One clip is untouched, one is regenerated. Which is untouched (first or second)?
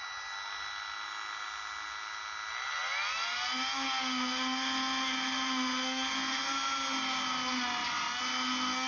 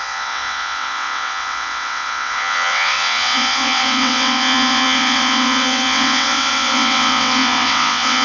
first